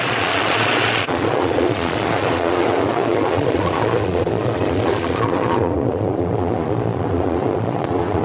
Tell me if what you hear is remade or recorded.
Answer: remade